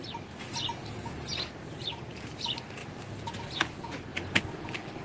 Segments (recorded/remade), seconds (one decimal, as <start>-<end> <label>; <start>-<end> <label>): 0.0-5.0 recorded